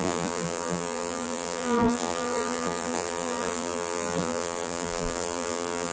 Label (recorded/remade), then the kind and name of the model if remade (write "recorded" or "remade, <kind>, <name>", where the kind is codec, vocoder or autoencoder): remade, vocoder, BigVGAN v2